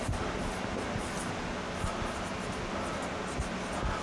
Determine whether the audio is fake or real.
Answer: real